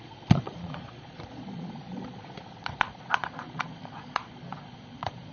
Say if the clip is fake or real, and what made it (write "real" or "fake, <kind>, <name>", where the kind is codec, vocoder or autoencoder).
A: fake, vocoder, Vocos